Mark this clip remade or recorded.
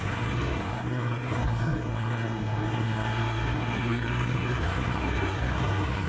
remade